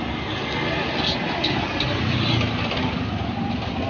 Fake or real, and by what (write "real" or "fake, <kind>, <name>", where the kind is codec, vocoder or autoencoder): real